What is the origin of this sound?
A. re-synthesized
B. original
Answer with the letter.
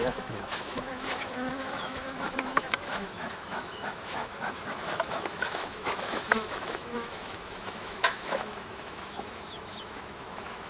A